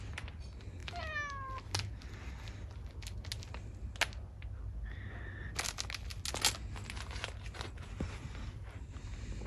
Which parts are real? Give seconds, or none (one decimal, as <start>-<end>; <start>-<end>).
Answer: 0.0-9.5